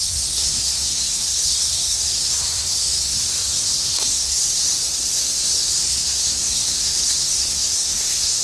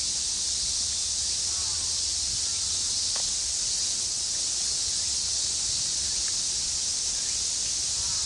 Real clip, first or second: second